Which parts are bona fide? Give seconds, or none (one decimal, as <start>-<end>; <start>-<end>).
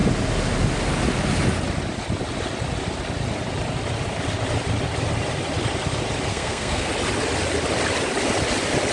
0.0-6.3; 6.9-8.9